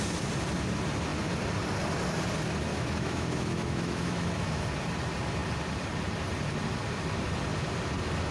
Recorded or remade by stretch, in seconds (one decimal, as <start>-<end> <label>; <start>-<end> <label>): 0.0-2.7 recorded; 2.7-4.6 remade; 4.6-8.3 recorded